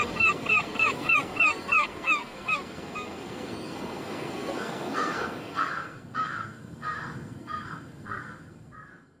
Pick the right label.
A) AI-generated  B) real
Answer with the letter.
A